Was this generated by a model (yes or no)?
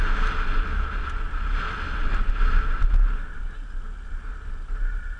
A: no